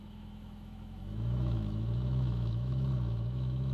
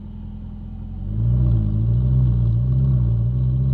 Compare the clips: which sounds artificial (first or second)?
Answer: first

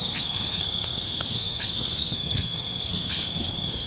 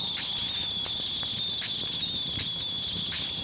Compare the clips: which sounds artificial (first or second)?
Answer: first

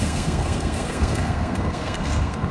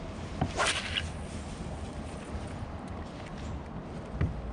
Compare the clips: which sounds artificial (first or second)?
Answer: first